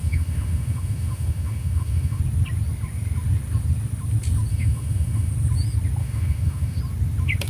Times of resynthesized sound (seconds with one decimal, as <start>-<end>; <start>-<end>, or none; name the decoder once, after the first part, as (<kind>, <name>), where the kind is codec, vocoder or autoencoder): 0.0-2.2 (autoencoder, DAC-VAE); 4.5-5.3; 6.0-6.8